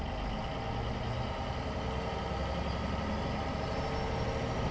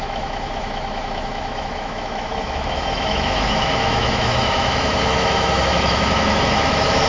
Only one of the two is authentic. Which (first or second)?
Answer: first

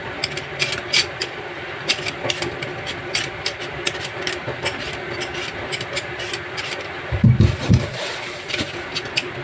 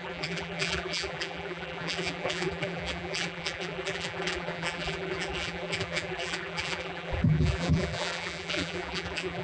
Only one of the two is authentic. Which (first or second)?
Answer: first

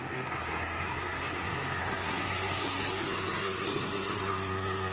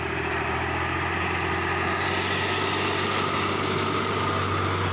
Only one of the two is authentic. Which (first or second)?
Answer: second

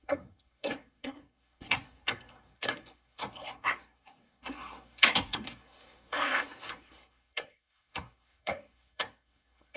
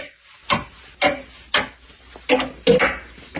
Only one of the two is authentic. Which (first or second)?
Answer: second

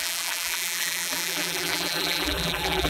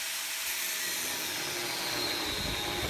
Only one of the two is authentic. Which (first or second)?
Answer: second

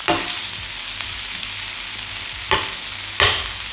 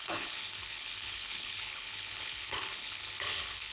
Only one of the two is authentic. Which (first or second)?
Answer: first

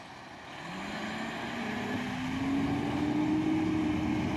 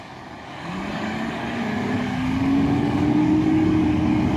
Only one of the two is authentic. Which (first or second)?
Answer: first